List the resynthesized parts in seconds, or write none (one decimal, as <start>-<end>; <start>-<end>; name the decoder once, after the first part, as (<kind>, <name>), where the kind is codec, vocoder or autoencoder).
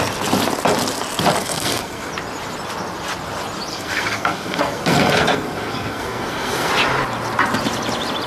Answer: 1.4-2.1 (codec, SNAC); 3.7-6.7